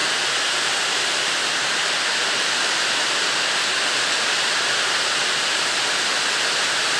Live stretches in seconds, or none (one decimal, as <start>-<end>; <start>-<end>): 0.0-5.2; 5.8-7.0